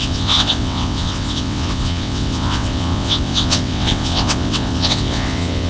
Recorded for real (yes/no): no